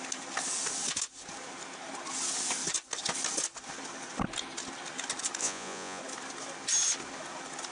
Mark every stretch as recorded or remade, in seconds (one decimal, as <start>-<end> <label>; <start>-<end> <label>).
0.0-5.4 recorded; 5.4-6.0 remade; 6.0-7.7 recorded